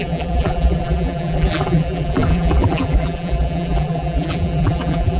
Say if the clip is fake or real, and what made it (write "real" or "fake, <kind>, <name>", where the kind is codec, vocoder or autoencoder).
fake, vocoder, BigVGAN v2